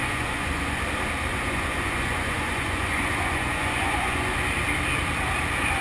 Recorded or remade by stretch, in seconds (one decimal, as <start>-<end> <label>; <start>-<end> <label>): 0.0-0.8 remade; 0.8-1.3 recorded; 1.3-4.3 remade; 4.3-5.8 recorded